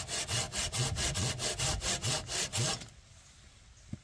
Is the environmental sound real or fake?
real